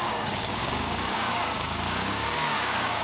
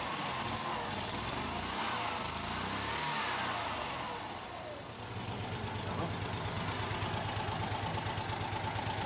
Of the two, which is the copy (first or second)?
first